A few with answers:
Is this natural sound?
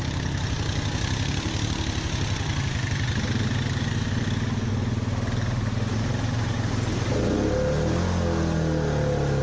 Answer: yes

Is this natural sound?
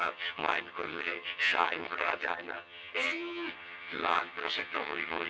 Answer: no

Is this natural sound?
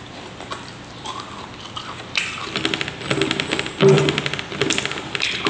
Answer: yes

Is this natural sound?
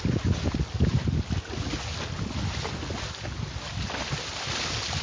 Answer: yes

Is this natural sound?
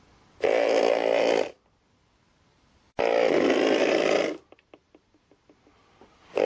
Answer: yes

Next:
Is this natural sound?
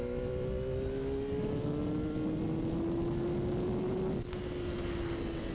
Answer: yes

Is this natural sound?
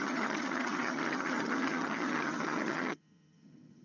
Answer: no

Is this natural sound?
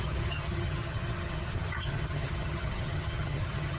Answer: no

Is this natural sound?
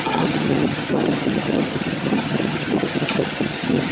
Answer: no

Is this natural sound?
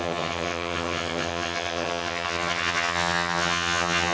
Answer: no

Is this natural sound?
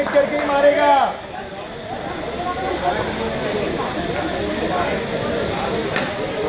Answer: yes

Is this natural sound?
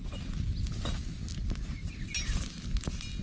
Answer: yes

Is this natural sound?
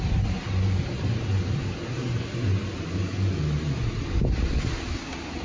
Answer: yes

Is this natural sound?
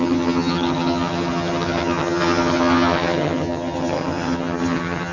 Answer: no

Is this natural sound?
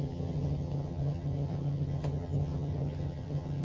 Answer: no